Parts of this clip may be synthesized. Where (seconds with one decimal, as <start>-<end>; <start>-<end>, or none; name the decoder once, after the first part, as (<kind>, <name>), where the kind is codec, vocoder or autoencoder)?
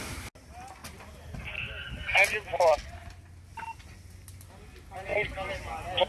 none